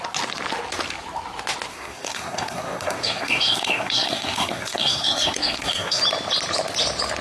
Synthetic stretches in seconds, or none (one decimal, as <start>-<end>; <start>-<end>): 1.7-6.0